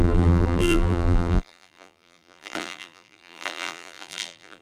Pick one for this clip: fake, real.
fake